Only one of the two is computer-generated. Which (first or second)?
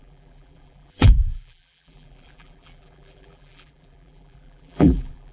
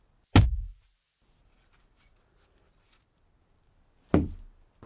first